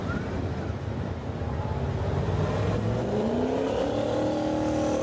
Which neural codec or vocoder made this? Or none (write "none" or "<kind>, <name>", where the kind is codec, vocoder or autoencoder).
none